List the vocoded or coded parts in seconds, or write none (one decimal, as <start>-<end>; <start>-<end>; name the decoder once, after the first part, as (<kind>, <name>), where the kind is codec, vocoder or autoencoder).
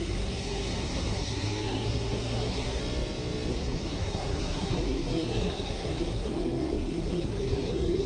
0.0-2.8 (codec, SNAC); 3.5-8.1